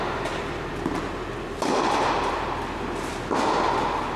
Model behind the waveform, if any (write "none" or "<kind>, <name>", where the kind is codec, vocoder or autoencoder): none